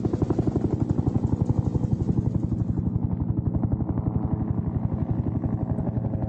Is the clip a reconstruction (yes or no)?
no